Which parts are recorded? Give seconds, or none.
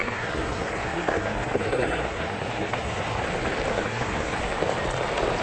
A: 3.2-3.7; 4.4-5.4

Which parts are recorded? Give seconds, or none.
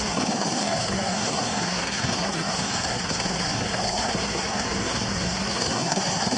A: none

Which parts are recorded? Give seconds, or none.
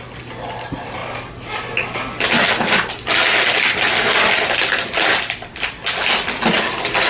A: 0.0-7.1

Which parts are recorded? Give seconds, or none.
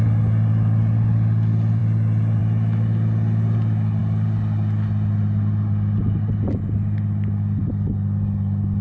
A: 0.0-8.8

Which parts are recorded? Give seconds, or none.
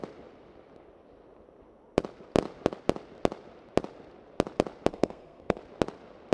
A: 0.0-4.9; 5.6-6.3